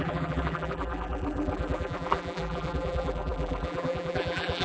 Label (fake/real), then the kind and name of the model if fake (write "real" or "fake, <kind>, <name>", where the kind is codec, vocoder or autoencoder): fake, vocoder, BigVGAN v2